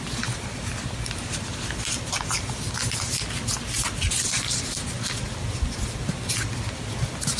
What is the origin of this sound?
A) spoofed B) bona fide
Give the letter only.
B